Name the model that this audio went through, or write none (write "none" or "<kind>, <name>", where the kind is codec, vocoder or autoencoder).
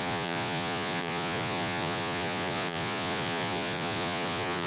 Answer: vocoder, Vocos